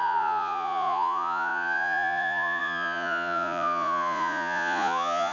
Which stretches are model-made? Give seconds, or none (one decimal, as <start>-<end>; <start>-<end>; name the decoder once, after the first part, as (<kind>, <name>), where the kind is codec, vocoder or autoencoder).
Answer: 0.0-5.3 (vocoder, Vocos)